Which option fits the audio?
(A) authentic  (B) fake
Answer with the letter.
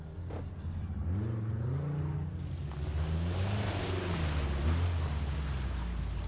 A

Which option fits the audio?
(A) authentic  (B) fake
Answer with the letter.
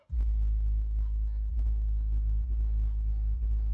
A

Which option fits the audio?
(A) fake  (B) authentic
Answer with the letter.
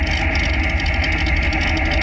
B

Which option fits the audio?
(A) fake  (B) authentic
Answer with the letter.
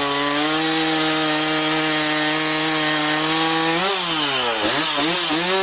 B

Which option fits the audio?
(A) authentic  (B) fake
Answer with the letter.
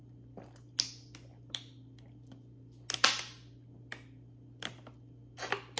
A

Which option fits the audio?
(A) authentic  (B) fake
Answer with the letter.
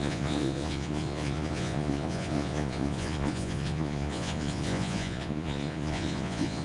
B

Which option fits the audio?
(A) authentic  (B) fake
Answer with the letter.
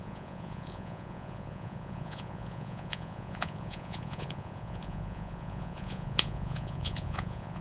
B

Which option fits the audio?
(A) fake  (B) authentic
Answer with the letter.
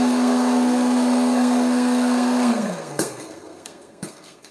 A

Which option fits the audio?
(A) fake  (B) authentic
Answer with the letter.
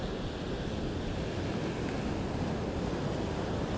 B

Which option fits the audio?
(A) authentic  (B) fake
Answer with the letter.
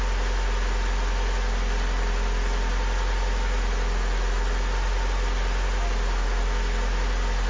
A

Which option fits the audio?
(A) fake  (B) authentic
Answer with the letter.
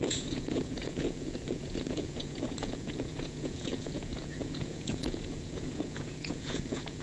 A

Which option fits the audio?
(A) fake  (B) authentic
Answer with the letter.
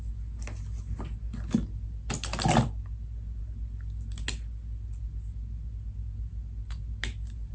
B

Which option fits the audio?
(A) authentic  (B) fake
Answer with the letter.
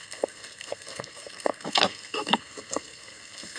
B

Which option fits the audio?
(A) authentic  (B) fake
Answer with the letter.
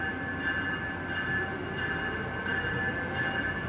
A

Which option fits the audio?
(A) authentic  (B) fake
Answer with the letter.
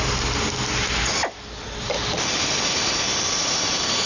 A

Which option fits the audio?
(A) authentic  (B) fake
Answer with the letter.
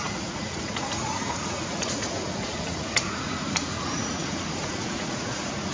B